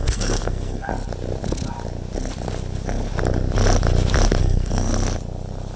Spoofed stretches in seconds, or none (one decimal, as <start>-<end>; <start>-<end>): 0.0-0.9; 4.4-4.9